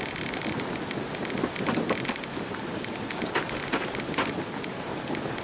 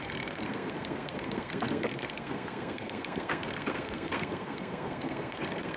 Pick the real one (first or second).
first